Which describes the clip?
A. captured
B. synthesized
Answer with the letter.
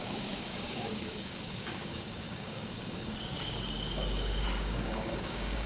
B